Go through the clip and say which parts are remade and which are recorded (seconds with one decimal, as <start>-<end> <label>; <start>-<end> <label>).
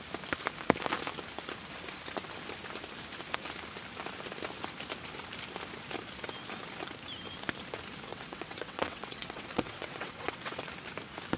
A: 0.0-8.1 recorded; 8.1-10.7 remade; 10.7-11.4 recorded